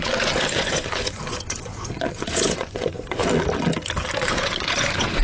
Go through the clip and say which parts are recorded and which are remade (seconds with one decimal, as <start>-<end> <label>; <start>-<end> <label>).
0.0-3.2 remade; 3.2-4.2 recorded; 4.2-5.2 remade